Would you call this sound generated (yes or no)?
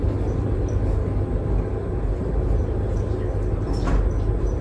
no